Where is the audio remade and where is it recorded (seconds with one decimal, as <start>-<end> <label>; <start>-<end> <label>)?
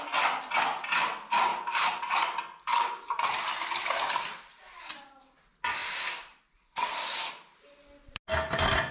0.0-1.5 recorded; 1.5-2.0 remade; 2.0-2.7 recorded; 2.7-5.1 remade; 5.1-5.8 recorded; 5.8-7.3 remade; 7.3-8.9 recorded